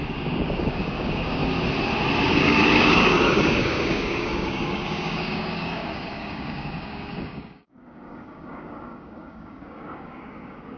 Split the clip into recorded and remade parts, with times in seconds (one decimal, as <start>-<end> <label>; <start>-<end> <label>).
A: 0.0-1.4 remade; 1.4-2.2 recorded; 2.2-10.8 remade

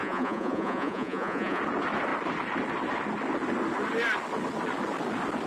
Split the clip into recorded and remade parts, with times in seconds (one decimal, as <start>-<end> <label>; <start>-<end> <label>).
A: 0.0-1.6 remade; 1.6-5.5 recorded

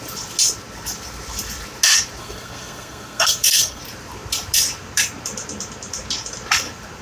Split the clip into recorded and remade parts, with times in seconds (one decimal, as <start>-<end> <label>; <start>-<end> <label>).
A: 0.0-2.2 recorded; 2.2-3.8 remade; 3.8-7.0 recorded

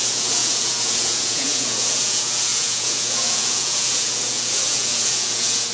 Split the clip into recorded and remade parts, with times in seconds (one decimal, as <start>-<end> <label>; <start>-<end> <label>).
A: 0.0-5.7 remade

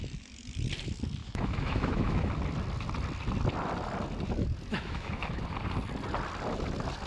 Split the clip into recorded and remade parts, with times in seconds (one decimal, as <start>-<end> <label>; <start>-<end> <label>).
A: 0.0-1.2 recorded; 1.2-2.3 remade; 2.3-4.7 recorded; 4.7-5.4 remade; 5.4-7.1 recorded